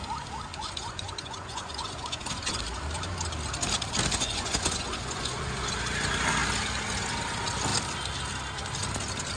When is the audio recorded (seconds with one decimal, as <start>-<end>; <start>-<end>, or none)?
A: 0.0-0.5; 2.6-4.1; 5.7-9.4

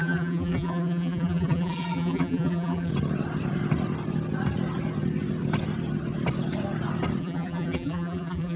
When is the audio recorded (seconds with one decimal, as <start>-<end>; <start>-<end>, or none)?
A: 2.9-7.2

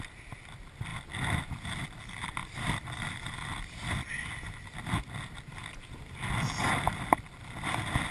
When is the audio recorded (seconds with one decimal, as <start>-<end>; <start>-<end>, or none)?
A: 0.0-8.1

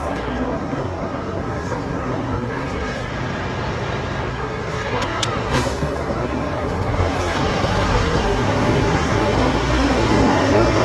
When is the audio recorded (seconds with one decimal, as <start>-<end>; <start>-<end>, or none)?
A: 3.1-4.3

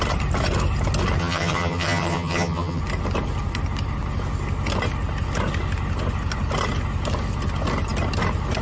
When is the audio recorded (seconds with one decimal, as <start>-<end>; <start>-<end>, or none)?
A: 0.0-1.2; 2.8-8.6

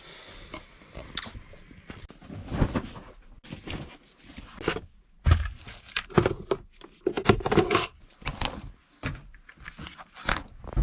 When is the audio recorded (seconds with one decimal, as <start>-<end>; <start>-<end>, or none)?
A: 0.0-10.8

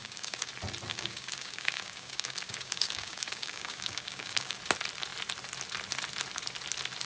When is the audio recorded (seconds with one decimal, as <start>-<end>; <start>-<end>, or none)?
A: 0.5-0.9; 4.6-7.0

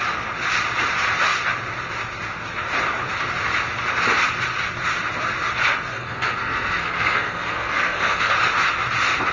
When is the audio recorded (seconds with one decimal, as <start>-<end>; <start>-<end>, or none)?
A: 0.0-5.9; 8.3-9.3